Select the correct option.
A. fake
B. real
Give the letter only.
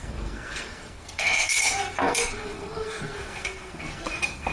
A